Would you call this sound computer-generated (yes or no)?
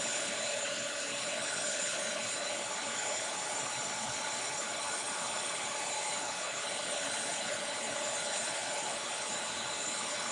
yes